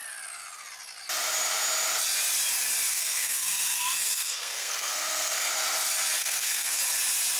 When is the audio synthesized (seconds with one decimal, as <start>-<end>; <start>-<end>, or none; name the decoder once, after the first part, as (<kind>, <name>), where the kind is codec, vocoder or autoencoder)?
2.9-5.5 (codec, SNAC); 6.2-6.8